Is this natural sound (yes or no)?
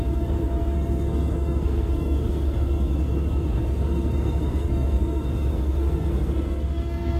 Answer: no